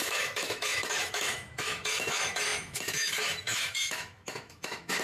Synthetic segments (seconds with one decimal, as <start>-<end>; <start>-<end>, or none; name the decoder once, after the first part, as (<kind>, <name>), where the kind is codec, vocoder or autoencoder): 0.0-5.0 (autoencoder, DAC-VAE)